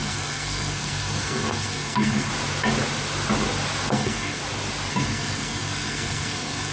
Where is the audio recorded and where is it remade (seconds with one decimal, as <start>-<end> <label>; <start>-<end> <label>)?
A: 0.0-2.3 remade; 2.3-3.9 recorded; 3.9-4.4 remade; 4.4-4.9 recorded; 4.9-6.7 remade